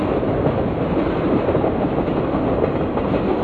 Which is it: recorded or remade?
recorded